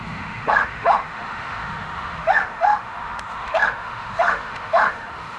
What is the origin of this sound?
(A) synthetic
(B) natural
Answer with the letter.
A